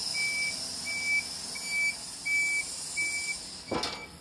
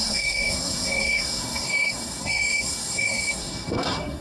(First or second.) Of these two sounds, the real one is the first